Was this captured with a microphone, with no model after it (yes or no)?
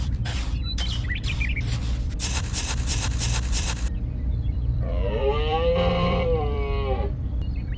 no